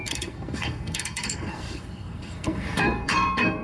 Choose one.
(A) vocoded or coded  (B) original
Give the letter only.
A